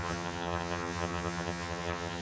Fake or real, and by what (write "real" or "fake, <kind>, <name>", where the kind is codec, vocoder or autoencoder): fake, vocoder, HiFi-GAN